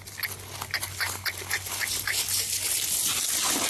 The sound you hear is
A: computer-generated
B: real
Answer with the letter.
B